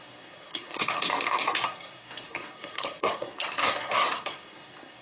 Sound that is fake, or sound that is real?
fake